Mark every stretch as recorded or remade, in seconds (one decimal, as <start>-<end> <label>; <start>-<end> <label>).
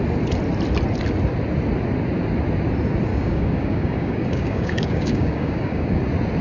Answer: 0.0-3.1 recorded; 3.1-6.0 remade; 6.0-6.4 recorded